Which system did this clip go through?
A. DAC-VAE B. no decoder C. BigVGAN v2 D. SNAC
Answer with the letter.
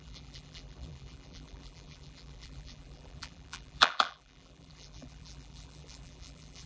C